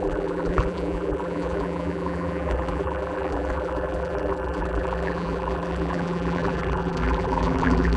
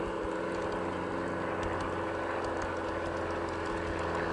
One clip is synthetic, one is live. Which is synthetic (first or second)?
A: first